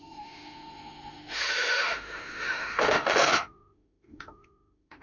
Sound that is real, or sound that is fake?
fake